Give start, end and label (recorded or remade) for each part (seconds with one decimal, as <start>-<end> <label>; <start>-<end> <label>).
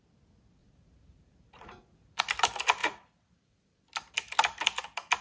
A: 0.0-0.6 recorded; 0.6-2.2 remade; 2.2-2.8 recorded; 2.8-3.8 remade; 3.8-5.2 recorded